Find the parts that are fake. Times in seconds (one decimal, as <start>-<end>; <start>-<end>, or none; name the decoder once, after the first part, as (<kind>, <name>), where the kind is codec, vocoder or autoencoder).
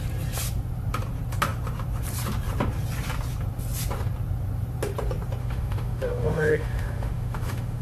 5.4-7.8 (autoencoder, DAC-VAE)